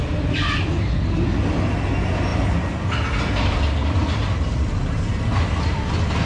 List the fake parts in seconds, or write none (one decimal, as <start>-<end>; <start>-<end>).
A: none